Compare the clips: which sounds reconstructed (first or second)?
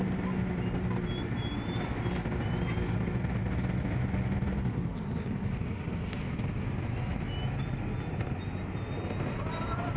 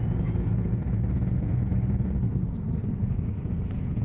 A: second